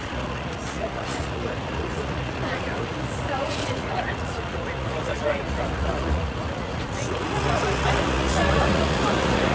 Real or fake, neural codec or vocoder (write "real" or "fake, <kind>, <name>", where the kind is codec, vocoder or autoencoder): fake, vocoder, Vocos